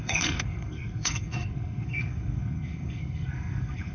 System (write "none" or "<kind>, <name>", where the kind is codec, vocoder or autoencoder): codec, SNAC